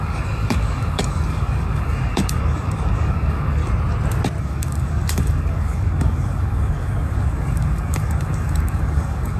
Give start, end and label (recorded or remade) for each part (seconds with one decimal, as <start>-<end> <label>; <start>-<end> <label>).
0.0-3.6 remade; 3.6-4.4 recorded; 4.4-9.4 remade

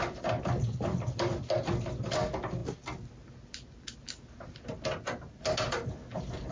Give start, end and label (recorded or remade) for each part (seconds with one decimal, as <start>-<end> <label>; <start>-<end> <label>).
0.0-6.5 recorded

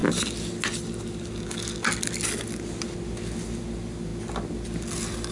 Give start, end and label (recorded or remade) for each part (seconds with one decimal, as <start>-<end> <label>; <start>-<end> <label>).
0.0-5.3 recorded